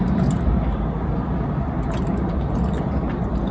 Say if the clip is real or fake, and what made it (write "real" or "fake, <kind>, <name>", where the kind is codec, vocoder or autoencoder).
real